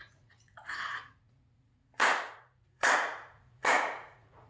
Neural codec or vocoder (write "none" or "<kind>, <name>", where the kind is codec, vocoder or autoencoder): vocoder, Vocos